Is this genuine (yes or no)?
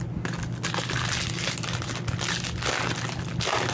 yes